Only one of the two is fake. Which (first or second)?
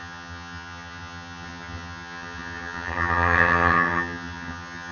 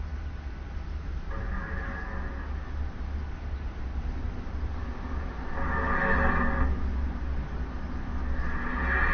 first